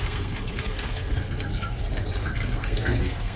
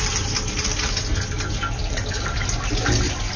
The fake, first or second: first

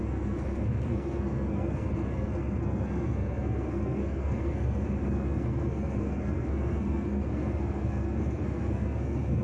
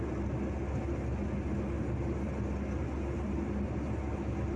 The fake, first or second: first